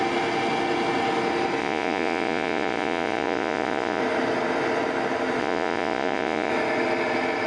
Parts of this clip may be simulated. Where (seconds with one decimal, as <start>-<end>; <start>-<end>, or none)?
1.6-4.0; 5.4-6.5